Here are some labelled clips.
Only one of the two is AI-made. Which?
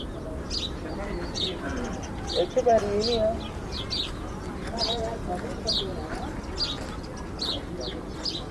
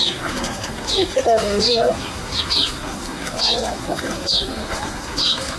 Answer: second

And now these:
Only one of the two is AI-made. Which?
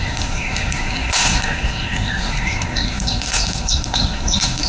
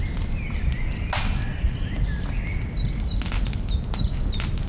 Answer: first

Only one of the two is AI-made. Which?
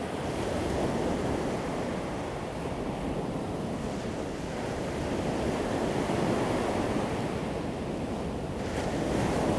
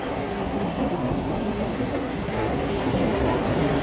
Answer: second